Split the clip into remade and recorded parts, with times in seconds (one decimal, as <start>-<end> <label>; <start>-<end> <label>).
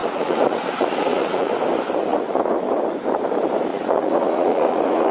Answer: 0.0-1.5 remade; 1.5-2.1 recorded; 2.1-2.7 remade; 2.7-3.7 recorded; 3.7-5.1 remade